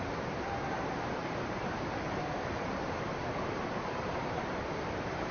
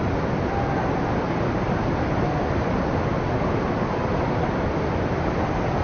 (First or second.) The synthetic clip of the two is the first